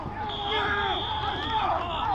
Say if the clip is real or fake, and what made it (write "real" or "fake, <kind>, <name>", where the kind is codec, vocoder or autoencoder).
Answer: real